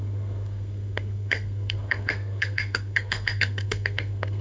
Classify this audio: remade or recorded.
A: remade